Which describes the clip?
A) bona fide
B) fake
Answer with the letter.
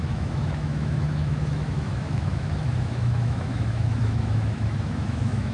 B